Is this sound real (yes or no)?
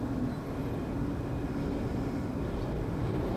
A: yes